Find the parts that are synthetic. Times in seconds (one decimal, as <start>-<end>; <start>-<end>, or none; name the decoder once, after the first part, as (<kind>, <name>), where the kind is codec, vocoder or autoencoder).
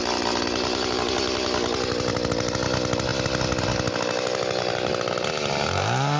none